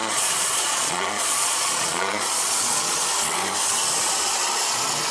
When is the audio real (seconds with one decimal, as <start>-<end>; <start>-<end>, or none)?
3.1-5.1